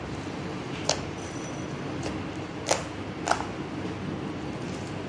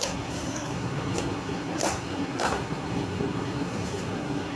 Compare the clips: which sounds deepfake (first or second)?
second